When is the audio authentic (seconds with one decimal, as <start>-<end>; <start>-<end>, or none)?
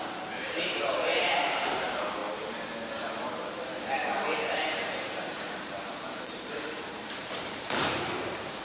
2.2-2.9